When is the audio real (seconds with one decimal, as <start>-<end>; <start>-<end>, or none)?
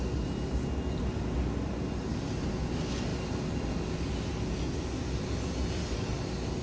0.0-6.6